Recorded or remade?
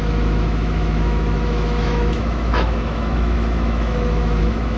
remade